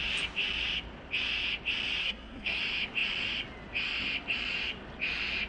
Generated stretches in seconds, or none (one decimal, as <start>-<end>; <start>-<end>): 2.0-2.6